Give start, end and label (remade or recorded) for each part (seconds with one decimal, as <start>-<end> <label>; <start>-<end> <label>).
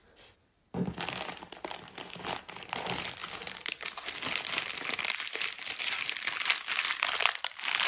0.0-7.9 recorded